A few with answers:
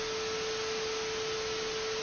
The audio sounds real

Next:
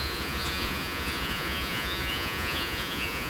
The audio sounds fake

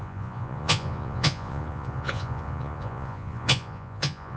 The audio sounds fake